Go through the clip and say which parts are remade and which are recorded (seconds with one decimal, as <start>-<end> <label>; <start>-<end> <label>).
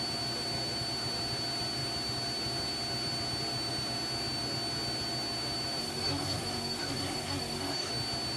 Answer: 0.0-5.8 recorded; 5.8-7.9 remade; 7.9-8.4 recorded